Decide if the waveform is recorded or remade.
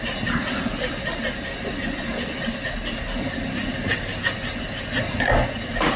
recorded